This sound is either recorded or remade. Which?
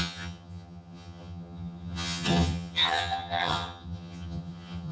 remade